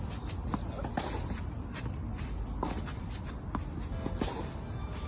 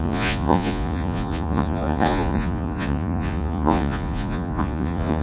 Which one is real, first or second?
first